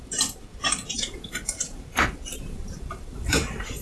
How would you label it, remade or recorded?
remade